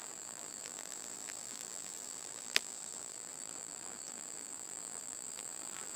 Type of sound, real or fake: fake